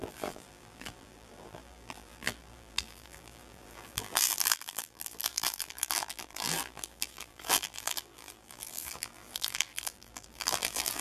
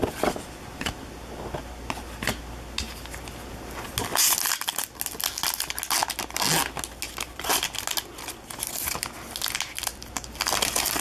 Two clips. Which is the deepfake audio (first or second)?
first